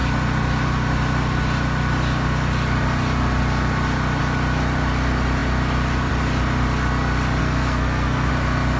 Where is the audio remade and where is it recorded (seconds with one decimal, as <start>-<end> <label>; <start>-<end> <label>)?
0.0-7.4 recorded; 7.4-8.3 remade; 8.3-8.8 recorded

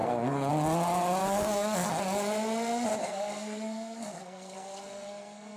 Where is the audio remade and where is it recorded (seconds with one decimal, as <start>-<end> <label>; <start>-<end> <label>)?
0.0-0.5 remade; 0.5-1.2 recorded; 1.2-2.0 remade; 2.0-3.0 recorded; 3.0-5.6 remade

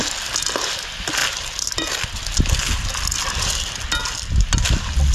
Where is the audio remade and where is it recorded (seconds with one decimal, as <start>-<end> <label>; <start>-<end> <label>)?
0.0-5.1 recorded

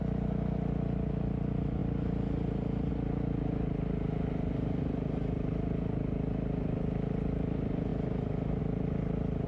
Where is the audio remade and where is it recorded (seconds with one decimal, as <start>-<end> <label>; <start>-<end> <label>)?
0.0-9.5 recorded

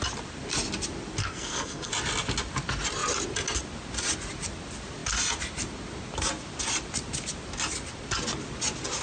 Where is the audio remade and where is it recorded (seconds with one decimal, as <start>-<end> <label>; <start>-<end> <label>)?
0.0-1.2 recorded; 1.2-1.9 remade; 1.9-9.0 recorded

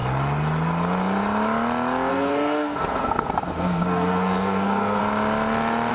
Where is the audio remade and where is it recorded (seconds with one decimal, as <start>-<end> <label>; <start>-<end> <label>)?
0.0-2.1 recorded; 2.1-5.0 remade; 5.0-5.9 recorded